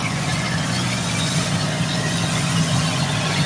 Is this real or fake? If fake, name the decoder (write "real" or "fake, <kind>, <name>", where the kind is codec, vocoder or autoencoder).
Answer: fake, vocoder, Vocos